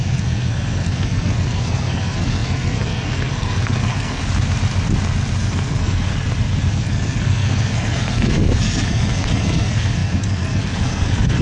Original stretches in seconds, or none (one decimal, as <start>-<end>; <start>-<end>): 4.2-5.4; 6.1-6.7